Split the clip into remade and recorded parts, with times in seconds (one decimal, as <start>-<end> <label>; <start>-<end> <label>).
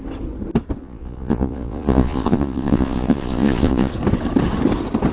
0.0-0.8 recorded; 0.8-3.9 remade; 3.9-5.1 recorded